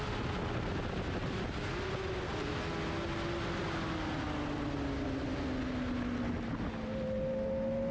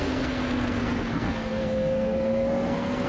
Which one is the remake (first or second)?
second